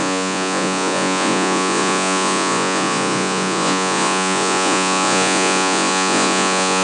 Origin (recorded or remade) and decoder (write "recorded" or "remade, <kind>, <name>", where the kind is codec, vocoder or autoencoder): remade, vocoder, Vocos